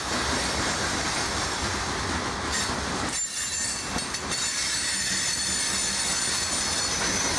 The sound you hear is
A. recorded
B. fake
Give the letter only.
A